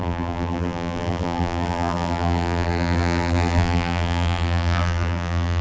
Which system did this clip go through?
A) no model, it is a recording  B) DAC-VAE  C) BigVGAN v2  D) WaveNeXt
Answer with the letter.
C